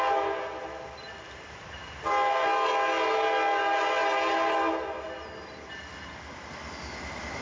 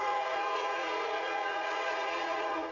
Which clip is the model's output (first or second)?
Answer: second